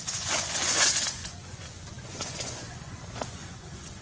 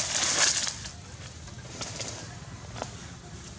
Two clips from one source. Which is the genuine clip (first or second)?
second